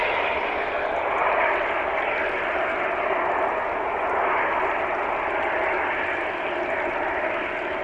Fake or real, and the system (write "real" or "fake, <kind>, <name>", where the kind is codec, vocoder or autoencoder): real